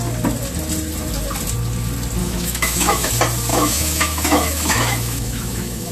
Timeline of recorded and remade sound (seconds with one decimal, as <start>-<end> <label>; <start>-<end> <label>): 0.0-2.2 recorded; 2.2-3.1 remade; 3.1-3.5 recorded; 3.5-5.9 remade